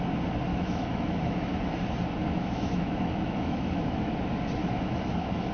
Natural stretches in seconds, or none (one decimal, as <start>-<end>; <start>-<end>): 0.0-0.5; 1.5-2.2; 4.1-4.6